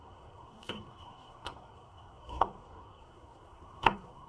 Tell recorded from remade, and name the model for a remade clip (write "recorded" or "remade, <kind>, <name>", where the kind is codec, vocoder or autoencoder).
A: remade, codec, SNAC